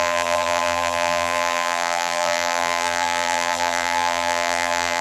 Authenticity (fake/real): fake